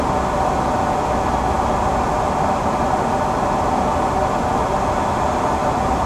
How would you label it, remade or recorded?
recorded